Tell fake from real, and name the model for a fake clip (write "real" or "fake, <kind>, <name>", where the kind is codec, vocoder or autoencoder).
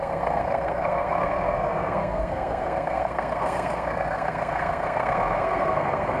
fake, codec, SNAC